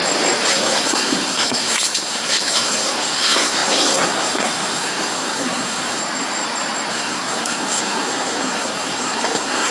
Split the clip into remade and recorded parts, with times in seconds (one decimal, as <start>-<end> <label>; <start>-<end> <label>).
0.0-0.5 recorded; 0.5-6.0 remade; 6.0-6.9 recorded; 6.9-9.7 remade